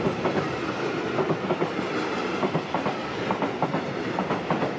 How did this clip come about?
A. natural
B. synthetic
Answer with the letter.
A